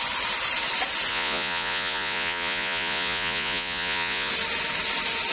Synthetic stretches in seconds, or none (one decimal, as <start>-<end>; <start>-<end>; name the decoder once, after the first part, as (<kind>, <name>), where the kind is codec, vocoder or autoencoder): 1.1-4.3 (vocoder, Vocos)